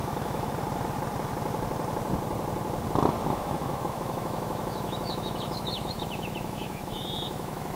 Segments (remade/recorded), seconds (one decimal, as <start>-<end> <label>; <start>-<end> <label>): 0.0-0.5 remade; 0.5-3.2 recorded; 3.2-7.8 remade